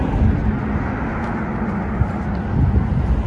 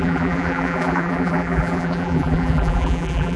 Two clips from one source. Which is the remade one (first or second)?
second